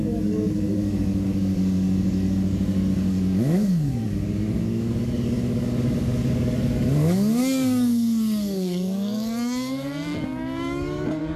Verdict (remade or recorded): remade